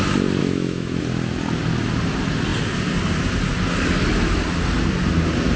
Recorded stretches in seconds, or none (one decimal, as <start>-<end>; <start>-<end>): 0.0-0.4; 1.0-5.6

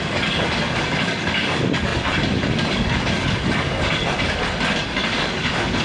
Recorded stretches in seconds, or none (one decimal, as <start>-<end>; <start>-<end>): none

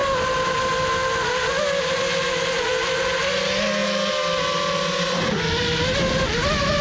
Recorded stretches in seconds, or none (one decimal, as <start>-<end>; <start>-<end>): 0.0-6.8

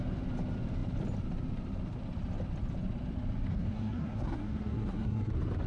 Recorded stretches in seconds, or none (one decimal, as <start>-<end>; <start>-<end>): 0.0-3.5; 5.3-5.7

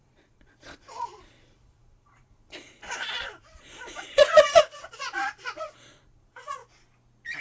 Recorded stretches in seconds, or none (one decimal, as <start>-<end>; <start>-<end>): 6.6-7.4

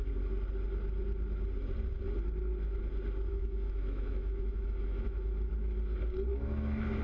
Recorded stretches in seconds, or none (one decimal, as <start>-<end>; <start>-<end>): 0.0-3.3; 5.5-6.3

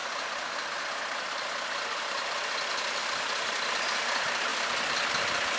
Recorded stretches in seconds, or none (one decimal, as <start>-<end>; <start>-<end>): 0.0-5.6